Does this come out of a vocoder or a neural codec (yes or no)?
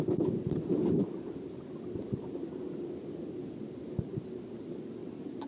no